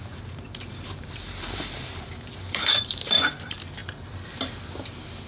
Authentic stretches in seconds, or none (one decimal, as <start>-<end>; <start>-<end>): 3.2-5.3